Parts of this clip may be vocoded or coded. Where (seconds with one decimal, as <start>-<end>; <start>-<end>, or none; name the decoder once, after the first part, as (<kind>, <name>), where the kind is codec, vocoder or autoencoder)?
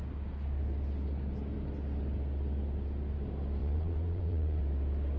3.6-4.6 (vocoder, Vocos)